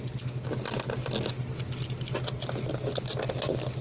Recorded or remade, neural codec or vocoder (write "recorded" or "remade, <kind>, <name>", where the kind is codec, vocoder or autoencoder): recorded